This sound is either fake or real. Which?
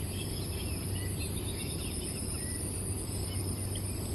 fake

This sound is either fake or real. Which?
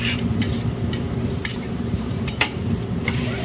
fake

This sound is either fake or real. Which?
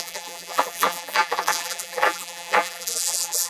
fake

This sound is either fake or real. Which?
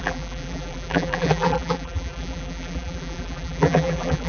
fake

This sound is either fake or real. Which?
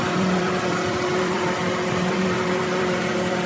fake